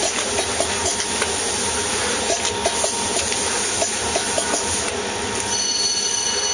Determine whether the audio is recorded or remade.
recorded